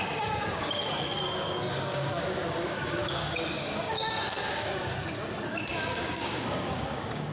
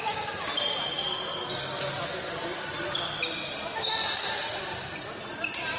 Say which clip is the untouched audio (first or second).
second